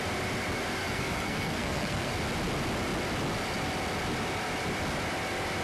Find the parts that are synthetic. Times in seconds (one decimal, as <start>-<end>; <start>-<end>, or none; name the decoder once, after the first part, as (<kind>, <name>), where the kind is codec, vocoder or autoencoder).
0.8-2.2 (codec, SNAC)